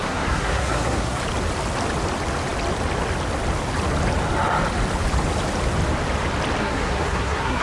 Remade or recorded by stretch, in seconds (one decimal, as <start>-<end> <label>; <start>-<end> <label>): 0.0-1.2 remade; 1.2-6.6 recorded; 6.6-7.6 remade